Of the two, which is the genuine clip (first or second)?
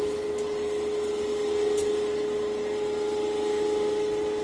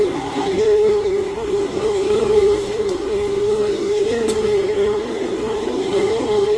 first